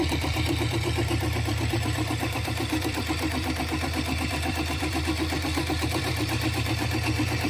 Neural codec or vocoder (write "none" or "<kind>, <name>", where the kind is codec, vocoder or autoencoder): vocoder, BigVGAN v2